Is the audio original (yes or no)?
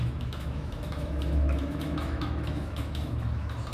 no